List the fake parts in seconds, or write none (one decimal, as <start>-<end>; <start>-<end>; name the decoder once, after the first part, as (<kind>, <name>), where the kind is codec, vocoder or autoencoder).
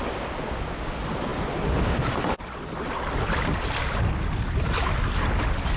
none